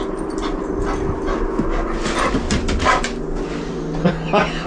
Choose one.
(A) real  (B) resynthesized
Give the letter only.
A